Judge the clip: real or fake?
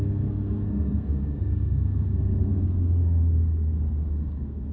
fake